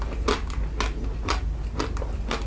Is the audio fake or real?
real